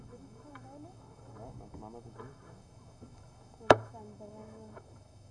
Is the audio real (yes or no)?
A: no